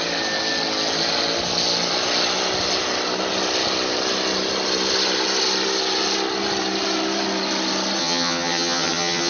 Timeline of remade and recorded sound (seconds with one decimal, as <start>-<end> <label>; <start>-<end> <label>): 0.0-8.0 recorded; 8.0-9.3 remade